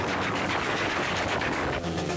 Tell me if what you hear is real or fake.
fake